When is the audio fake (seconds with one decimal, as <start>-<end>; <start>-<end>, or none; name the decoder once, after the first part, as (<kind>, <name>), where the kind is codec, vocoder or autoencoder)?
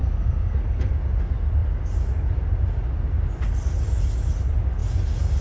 0.0-0.9 (codec, SNAC)